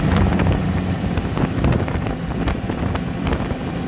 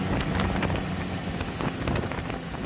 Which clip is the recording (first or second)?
second